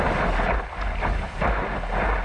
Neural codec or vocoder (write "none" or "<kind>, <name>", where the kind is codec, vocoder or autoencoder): none